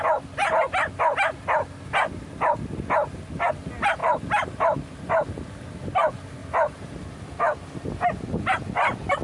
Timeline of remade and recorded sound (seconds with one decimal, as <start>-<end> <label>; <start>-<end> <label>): 0.0-4.0 recorded; 4.0-5.7 remade; 5.7-6.4 recorded; 6.4-6.9 remade; 6.9-9.2 recorded